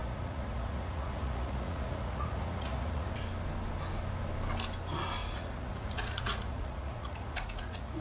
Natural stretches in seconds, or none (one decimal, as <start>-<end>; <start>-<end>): 3.1-5.2